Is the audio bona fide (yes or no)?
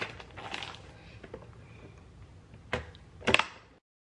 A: yes